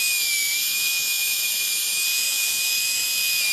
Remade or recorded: remade